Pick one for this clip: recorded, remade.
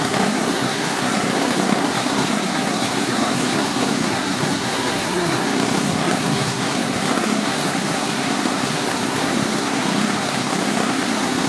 remade